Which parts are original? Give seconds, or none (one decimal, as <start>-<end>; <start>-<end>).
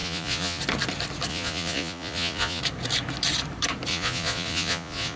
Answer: 0.6-1.3; 2.6-3.9